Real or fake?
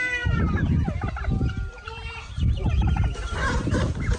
fake